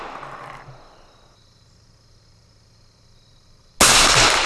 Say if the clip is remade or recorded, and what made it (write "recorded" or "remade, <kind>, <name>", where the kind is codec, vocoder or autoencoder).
recorded